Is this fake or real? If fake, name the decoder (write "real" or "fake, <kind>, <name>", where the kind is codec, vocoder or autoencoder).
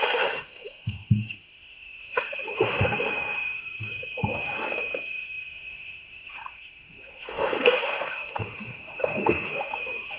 fake, autoencoder, DAC-VAE